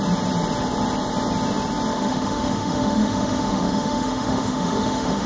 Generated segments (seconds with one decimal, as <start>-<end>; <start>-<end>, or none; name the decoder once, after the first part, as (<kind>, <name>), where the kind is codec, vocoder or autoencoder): 1.9-5.3 (autoencoder, DAC-VAE)